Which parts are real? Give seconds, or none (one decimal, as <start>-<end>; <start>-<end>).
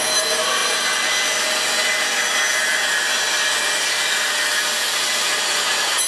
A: 0.0-6.1